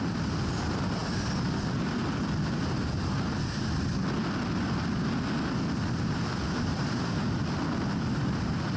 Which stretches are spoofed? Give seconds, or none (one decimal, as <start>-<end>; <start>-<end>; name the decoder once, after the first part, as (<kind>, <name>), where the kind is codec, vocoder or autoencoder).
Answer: 6.7-7.3 (vocoder, BigVGAN v2)